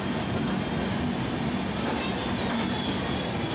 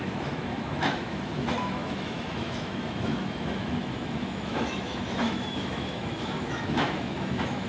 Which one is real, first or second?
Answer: first